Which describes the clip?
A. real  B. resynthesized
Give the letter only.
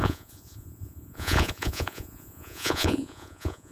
B